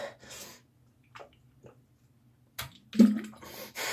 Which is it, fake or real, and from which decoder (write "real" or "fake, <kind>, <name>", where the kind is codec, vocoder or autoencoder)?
real